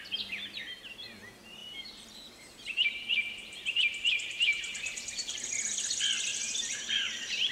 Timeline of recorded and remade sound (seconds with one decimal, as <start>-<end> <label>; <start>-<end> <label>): 0.0-1.6 recorded; 1.6-5.5 remade; 5.5-6.3 recorded; 6.3-7.5 remade

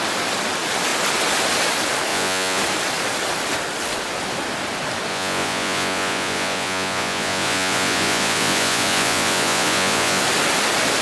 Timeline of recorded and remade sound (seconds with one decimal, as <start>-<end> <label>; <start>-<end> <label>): 0.0-2.1 recorded; 2.1-2.6 remade; 2.6-5.1 recorded; 5.1-10.2 remade; 10.2-11.0 recorded

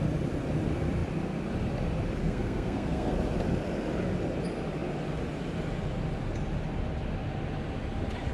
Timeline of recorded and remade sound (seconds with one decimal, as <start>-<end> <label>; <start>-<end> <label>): 0.0-2.2 recorded; 2.2-3.1 remade; 3.1-8.3 recorded

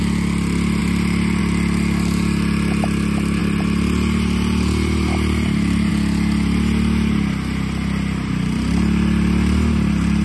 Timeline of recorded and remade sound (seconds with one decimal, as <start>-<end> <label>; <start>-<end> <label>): 0.0-0.8 recorded; 0.8-1.4 remade; 1.4-3.4 recorded; 3.4-5.9 remade; 5.9-10.2 recorded

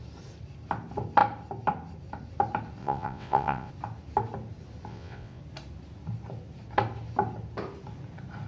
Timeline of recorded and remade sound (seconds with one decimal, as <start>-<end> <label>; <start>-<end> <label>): 0.0-2.8 recorded; 2.8-3.7 remade; 3.7-4.9 recorded; 4.9-5.4 remade; 5.4-8.5 recorded

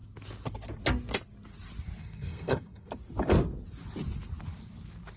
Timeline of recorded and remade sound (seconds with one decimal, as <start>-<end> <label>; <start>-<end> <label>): 0.0-2.0 recorded; 2.0-2.9 remade; 2.9-5.2 recorded